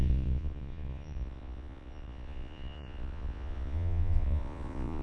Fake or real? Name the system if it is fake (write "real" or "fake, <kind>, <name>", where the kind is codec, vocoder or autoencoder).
fake, vocoder, Vocos